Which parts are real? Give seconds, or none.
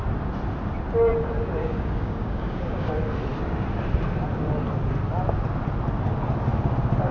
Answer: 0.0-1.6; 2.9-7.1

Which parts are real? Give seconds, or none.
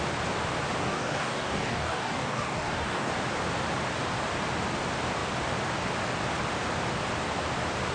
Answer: 0.0-0.8; 3.1-7.9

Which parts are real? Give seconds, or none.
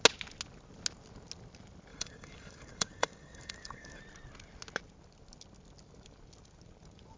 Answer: 0.0-1.9; 4.0-7.2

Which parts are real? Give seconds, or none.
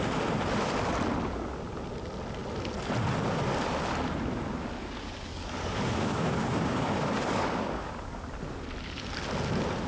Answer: 0.0-4.8; 8.2-9.9